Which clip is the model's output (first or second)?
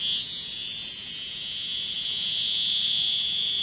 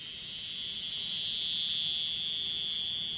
first